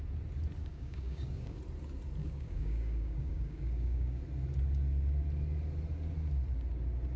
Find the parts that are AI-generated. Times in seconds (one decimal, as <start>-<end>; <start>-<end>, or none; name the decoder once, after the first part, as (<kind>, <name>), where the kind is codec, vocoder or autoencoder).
0.6-1.6 (codec, DAC); 2.2-4.2